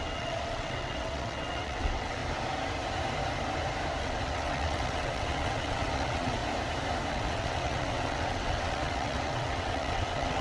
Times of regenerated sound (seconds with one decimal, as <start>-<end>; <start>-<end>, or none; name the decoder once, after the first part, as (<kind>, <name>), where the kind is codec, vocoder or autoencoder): 0.0-2.2 (vocoder, WaveNeXt); 4.0-6.4; 7.1-10.4